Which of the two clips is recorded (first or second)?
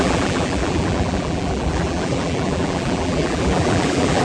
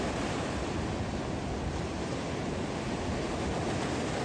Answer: second